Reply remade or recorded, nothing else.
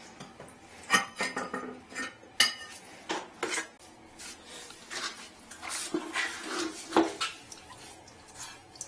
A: recorded